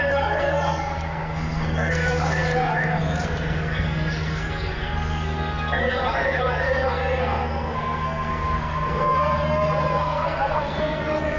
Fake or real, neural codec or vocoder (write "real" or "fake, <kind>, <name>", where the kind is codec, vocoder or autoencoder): fake, codec, SNAC